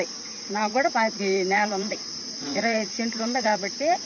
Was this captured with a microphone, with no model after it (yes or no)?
no